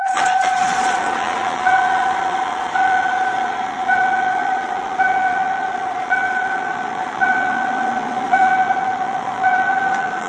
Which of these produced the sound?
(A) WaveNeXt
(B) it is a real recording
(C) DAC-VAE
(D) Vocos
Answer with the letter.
D